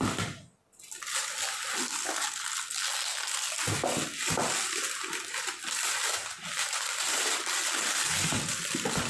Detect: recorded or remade recorded